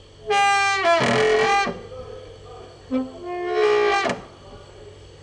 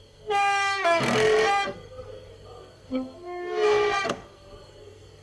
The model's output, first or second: second